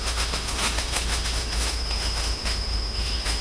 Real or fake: fake